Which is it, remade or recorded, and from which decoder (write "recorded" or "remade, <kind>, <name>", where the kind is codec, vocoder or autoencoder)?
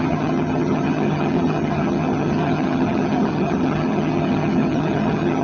remade, vocoder, HiFi-GAN